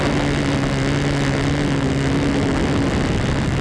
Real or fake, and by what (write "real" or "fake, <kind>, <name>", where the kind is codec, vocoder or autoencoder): real